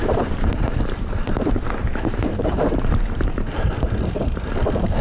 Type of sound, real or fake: fake